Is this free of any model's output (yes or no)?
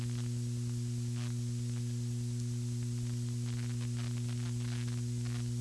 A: yes